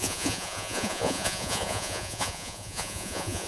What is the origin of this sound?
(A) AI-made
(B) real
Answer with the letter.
A